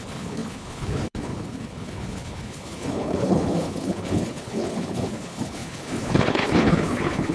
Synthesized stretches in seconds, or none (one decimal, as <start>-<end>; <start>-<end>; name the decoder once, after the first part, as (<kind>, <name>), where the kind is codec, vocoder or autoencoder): 0.0-7.3 (codec, HILCodec)